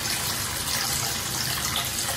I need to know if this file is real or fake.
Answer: real